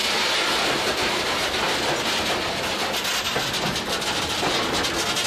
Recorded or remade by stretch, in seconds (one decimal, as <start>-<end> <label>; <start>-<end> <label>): 0.0-5.3 recorded

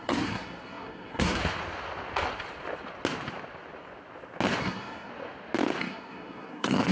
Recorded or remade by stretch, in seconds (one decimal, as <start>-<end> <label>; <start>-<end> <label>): 0.0-1.4 remade; 1.4-4.6 recorded; 4.6-5.1 remade; 5.1-5.8 recorded; 5.8-6.9 remade